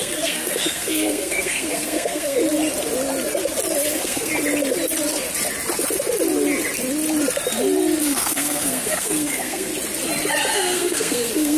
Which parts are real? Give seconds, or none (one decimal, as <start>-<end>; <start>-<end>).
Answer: 2.4-3.9; 4.3-8.0; 9.7-10.5